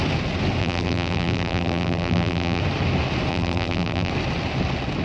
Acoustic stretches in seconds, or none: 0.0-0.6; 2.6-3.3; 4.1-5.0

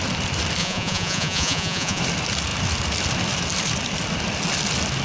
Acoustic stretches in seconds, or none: 0.0-0.6; 2.0-5.0

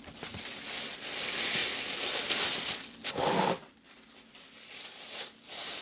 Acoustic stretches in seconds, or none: 0.0-5.8

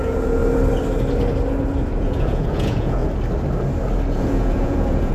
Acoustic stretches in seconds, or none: 0.4-2.0; 3.0-4.1

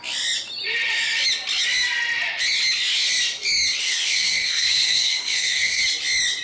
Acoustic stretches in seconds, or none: 0.0-3.8; 5.8-6.4